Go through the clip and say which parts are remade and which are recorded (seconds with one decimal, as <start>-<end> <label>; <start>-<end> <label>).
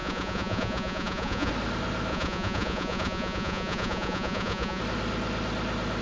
0.0-1.5 remade; 1.5-2.1 recorded; 2.1-4.8 remade; 4.8-6.0 recorded